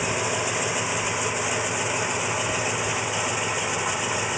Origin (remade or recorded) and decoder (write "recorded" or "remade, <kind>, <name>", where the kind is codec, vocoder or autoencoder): recorded